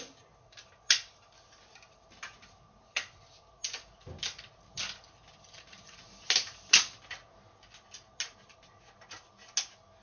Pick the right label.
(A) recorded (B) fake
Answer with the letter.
A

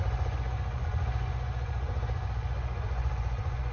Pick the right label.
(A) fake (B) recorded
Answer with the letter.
A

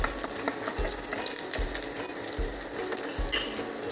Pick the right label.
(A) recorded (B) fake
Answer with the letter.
A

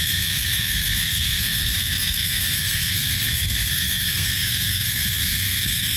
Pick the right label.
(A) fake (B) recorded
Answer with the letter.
A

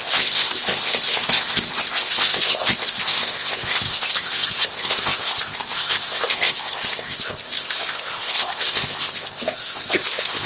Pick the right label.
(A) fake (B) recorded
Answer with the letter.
A